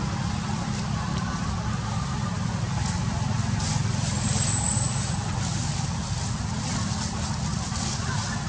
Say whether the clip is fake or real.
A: real